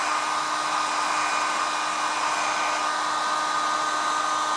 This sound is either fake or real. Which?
real